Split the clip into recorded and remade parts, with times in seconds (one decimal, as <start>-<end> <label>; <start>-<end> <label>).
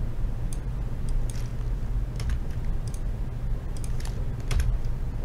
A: 0.0-1.5 remade; 1.5-2.5 recorded; 2.5-3.2 remade; 3.2-3.7 recorded; 3.7-5.2 remade